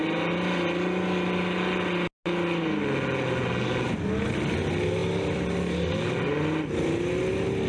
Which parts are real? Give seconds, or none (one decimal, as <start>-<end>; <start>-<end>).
0.0-7.7